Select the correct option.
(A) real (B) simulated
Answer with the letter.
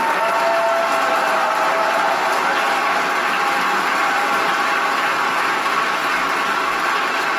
A